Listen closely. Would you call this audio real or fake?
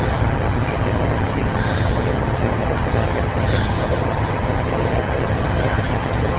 fake